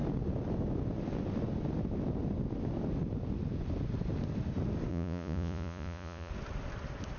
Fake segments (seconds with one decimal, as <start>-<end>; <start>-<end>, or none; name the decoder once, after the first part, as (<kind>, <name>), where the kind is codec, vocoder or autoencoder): 4.9-6.3 (vocoder, Vocos)